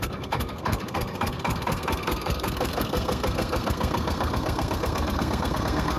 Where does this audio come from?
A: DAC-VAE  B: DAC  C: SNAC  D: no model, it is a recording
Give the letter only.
C